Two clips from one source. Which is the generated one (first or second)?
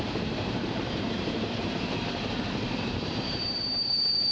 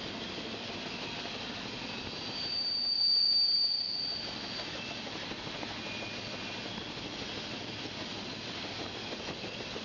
first